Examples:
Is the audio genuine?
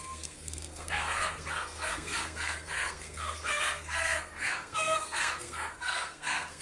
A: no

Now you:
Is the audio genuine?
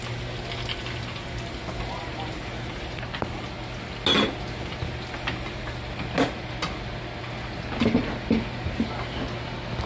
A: yes